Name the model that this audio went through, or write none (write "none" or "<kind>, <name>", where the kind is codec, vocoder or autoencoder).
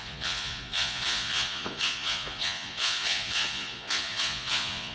vocoder, Vocos